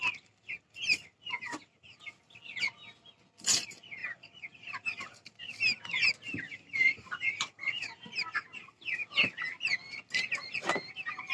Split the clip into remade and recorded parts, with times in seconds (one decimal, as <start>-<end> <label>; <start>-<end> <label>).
0.0-2.0 remade; 2.0-4.0 recorded; 4.0-5.4 remade; 5.4-6.5 recorded; 6.5-8.0 remade; 8.0-11.3 recorded